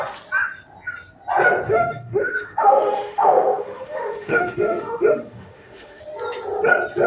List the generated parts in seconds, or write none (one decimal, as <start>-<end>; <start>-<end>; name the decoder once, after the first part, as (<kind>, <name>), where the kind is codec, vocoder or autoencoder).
1.7-6.0 (autoencoder, DAC-VAE)